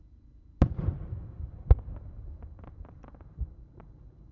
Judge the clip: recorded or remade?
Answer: recorded